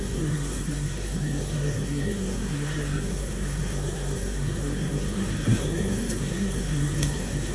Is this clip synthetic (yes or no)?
yes